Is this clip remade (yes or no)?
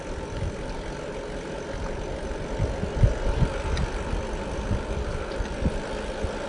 no